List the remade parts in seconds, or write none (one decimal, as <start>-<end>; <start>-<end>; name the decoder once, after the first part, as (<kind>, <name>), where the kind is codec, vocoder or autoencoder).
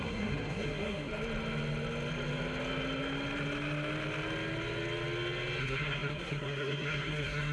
0.0-1.1 (codec, SNAC); 5.6-7.5